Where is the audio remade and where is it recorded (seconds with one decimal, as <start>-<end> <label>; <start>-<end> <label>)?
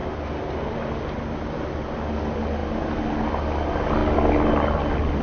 0.0-5.2 recorded